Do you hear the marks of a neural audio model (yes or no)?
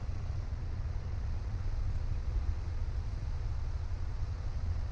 yes